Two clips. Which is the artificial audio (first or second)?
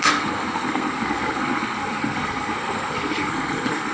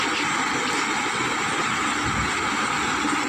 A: first